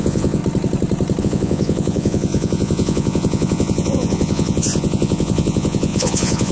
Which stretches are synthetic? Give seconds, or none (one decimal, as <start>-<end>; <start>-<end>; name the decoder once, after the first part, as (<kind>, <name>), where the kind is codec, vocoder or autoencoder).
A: 0.0-0.4 (vocoder, Vocos); 1.2-6.5